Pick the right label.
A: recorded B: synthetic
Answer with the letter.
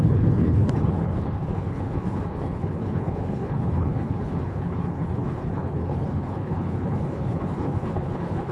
B